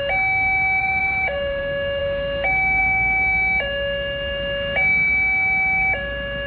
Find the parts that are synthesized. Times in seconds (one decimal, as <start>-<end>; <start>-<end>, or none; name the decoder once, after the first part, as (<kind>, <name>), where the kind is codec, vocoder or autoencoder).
0.8-1.6 (vocoder, BigVGAN v2)